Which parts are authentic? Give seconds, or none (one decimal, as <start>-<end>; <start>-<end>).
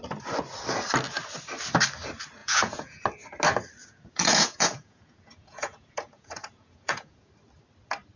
0.0-2.4; 3.0-3.8; 7.3-8.2